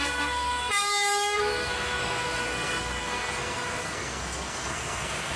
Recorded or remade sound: remade